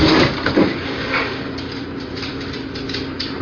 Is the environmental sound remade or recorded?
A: remade